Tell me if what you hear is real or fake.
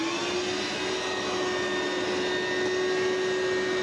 real